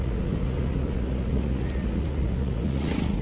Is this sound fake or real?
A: fake